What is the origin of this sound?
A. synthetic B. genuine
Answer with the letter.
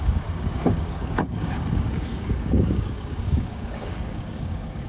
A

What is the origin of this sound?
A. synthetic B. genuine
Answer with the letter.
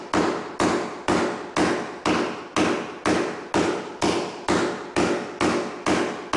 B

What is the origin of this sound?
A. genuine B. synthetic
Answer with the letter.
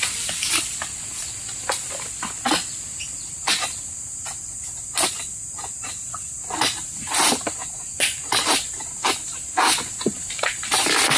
B